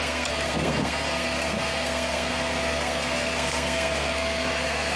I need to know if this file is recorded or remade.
remade